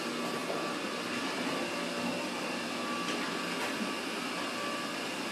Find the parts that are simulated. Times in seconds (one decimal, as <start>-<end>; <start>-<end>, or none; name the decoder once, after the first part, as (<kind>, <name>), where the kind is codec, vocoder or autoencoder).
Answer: none